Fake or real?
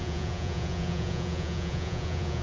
fake